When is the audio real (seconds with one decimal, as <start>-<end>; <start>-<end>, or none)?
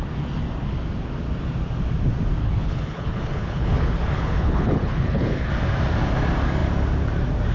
0.0-2.4; 5.5-7.5